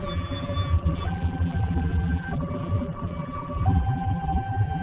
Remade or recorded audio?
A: remade